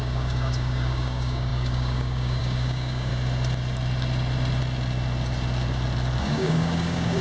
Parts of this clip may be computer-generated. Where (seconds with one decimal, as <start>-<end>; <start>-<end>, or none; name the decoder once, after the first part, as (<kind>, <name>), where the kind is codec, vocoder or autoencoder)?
0.0-3.1 (codec, DAC); 6.2-7.2